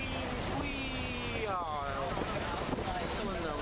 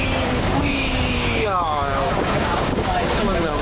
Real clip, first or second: first